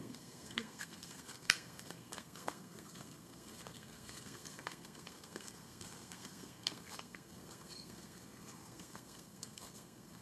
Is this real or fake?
fake